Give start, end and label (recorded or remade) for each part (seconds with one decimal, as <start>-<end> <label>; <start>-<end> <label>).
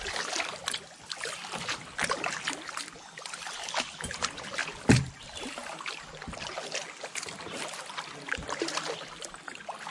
0.0-9.9 recorded